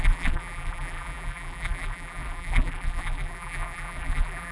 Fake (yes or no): yes